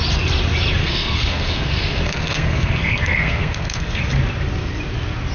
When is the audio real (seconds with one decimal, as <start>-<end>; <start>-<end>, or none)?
0.0-0.8; 4.0-5.3